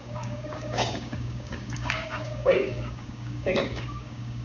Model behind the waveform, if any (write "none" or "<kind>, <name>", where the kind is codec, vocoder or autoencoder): codec, DAC